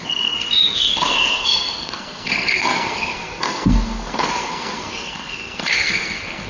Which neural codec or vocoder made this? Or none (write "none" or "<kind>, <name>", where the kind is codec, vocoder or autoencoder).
codec, SNAC